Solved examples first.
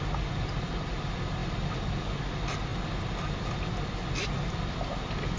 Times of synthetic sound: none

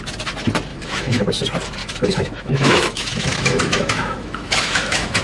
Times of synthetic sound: 0.7-1.2; 1.8-5.2

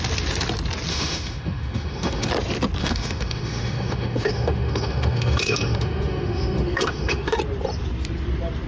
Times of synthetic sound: 0.9-2.3; 2.8-7.4